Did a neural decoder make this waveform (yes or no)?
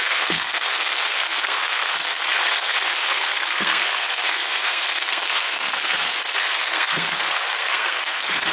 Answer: yes